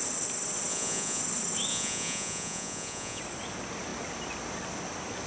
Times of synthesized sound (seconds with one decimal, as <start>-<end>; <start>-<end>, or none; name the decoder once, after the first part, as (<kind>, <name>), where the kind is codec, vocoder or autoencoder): 0.7-1.2 (vocoder, Vocos); 1.7-3.2